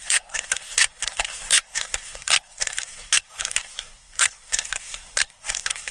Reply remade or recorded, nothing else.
remade